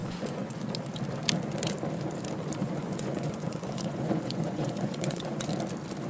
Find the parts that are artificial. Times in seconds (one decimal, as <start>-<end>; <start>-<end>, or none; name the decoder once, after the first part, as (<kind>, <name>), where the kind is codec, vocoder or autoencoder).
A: 0.0-0.6 (vocoder, Vocos); 2.6-5.5